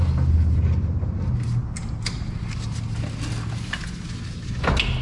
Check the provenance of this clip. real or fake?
real